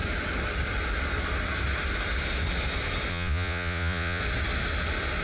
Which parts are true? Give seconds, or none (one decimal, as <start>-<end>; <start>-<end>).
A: 0.0-3.1; 4.2-5.2